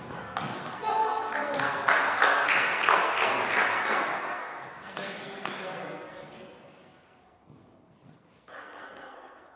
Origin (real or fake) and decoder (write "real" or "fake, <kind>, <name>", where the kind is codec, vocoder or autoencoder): fake, codec, SNAC